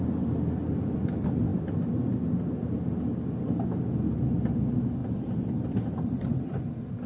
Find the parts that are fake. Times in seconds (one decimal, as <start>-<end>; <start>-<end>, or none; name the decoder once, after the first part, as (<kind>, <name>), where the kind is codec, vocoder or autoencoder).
1.5-2.2 (vocoder, BigVGAN v2); 5.0-6.6

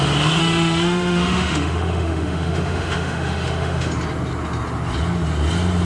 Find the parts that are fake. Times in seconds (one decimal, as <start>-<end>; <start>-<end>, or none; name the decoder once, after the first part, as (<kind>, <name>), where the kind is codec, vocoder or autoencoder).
0.4-3.9 (autoencoder, DAC-VAE)

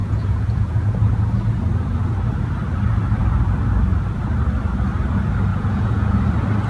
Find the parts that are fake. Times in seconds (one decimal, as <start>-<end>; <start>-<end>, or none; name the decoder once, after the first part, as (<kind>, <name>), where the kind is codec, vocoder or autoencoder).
0.0-0.9 (vocoder, Vocos); 5.5-6.2

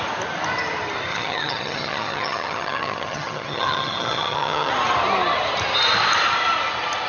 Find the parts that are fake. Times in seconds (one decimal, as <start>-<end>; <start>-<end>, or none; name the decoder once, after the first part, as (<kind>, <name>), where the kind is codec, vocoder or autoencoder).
1.1-4.7 (vocoder, HiFi-GAN)

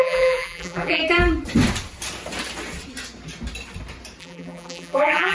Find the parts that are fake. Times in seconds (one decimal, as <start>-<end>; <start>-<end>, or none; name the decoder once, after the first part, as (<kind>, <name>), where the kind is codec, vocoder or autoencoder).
0.0-1.0 (vocoder, BigVGAN v2); 4.2-5.3

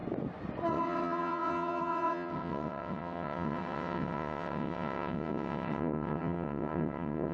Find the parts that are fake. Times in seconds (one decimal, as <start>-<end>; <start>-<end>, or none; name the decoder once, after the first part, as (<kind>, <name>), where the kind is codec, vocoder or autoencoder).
0.7-7.3 (vocoder, WaveNeXt)

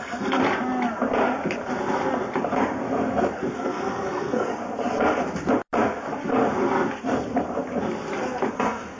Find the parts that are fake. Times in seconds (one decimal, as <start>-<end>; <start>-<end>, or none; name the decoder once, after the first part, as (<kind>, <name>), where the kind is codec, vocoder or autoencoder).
0.0-0.4 (codec, SNAC); 3.5-4.5; 8.5-9.0

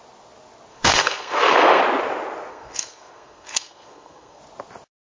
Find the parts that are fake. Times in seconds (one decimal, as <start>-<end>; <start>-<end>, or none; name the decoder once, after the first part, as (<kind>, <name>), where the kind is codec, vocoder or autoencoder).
0.7-1.8 (codec, SNAC); 2.5-4.4